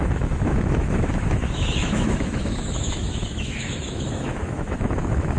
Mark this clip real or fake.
fake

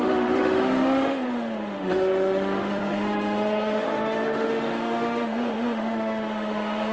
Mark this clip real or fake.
fake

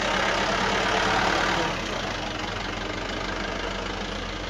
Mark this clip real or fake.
real